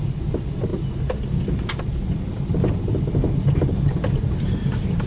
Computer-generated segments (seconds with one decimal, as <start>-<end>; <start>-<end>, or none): none